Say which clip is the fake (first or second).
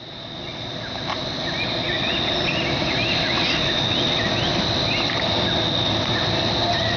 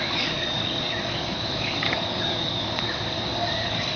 second